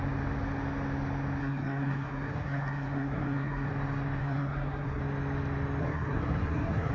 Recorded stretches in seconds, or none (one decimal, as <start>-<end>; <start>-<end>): 0.0-1.4; 3.7-4.2; 5.0-5.8